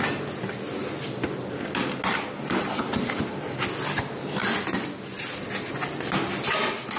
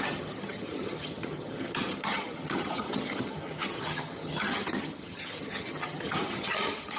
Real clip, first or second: first